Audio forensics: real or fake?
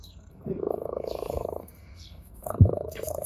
fake